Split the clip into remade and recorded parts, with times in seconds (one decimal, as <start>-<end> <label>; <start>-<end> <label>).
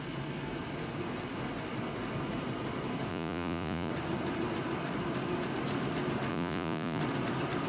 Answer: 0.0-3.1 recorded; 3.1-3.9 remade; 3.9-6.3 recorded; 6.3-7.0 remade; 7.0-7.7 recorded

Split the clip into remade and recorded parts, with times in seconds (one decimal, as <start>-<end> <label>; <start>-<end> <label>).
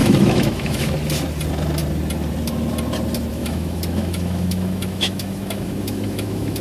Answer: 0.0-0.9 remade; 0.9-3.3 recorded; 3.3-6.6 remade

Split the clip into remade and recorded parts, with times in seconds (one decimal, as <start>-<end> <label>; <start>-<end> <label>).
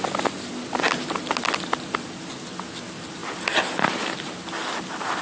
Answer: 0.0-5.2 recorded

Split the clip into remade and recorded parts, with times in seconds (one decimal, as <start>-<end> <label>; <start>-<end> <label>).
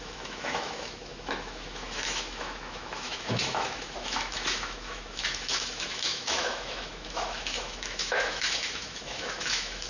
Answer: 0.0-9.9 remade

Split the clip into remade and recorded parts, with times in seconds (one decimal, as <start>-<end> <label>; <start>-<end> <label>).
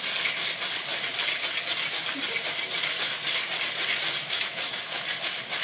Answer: 0.0-4.2 recorded; 4.2-5.0 remade; 5.0-5.6 recorded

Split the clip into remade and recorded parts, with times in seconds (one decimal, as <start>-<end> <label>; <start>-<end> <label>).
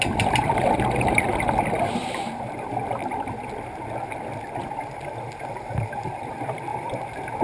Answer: 0.0-2.0 recorded; 2.0-2.7 remade; 2.7-7.4 recorded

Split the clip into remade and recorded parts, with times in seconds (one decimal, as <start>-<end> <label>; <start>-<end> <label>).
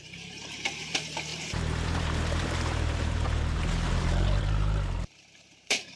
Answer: 0.0-6.0 remade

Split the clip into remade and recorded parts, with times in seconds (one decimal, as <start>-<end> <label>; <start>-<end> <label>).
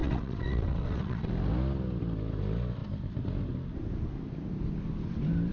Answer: 0.0-1.3 remade; 1.3-5.5 recorded